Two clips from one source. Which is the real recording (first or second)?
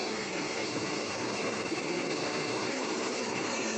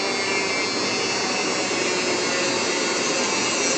second